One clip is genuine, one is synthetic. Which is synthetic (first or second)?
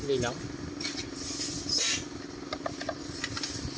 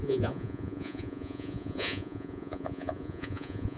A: second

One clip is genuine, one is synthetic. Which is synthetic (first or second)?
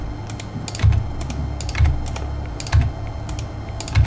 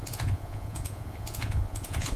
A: second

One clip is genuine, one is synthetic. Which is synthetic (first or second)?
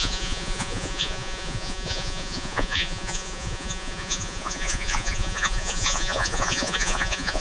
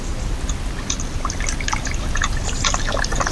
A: first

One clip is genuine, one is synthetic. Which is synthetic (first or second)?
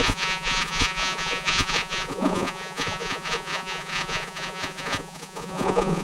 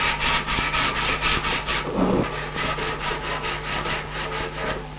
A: first